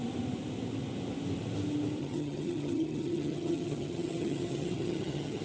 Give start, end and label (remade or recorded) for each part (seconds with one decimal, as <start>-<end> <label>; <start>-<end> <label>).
0.0-2.0 recorded; 2.0-5.4 remade